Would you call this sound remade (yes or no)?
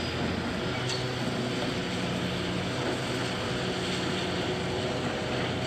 no